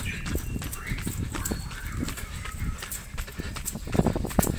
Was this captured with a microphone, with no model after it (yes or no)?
yes